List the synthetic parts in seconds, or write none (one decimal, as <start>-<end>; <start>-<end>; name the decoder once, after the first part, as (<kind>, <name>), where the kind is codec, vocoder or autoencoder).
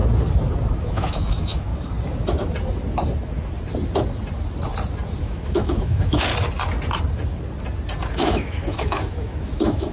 0.8-1.7 (autoencoder, DAC-VAE); 5.2-6.3; 8.1-9.9